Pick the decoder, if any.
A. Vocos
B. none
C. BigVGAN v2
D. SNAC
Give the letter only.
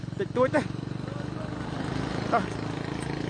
B